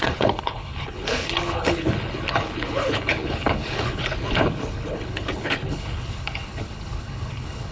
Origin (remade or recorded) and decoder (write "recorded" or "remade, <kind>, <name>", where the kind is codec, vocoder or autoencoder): remade, codec, HILCodec